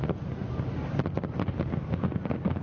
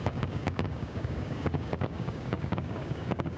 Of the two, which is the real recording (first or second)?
first